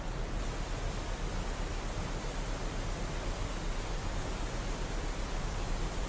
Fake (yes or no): no